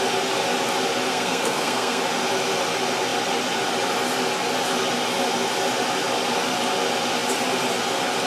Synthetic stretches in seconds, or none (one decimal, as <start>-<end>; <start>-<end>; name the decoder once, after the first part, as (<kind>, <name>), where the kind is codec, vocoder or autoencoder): 1.1-2.0 (codec, SNAC)